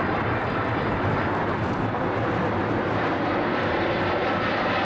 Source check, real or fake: real